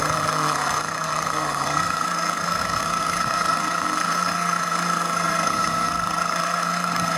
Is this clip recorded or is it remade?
remade